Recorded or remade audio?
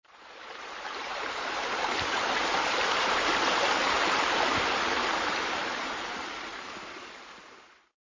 remade